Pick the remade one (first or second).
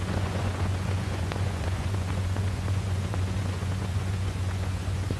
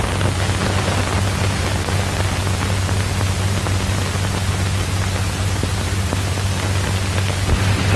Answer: first